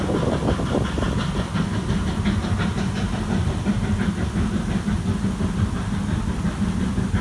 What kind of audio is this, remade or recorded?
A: recorded